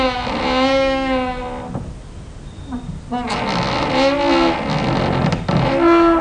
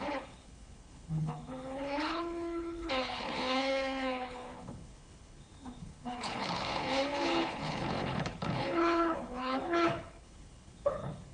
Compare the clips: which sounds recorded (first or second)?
first